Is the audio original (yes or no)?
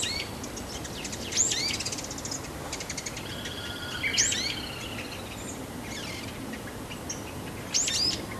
yes